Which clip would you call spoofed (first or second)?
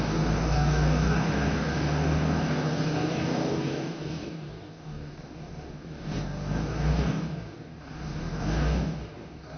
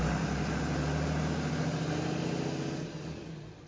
first